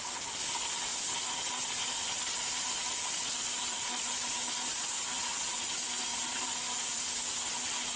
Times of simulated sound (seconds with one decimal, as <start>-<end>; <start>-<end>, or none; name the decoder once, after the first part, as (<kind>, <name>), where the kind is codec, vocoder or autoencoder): 6.1-7.0 (vocoder, BigVGAN v2)